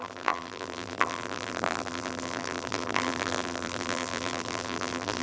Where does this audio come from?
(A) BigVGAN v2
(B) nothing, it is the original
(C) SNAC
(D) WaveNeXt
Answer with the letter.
A